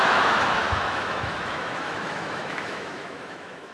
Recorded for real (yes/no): no